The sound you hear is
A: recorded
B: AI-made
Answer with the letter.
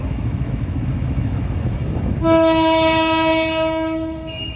B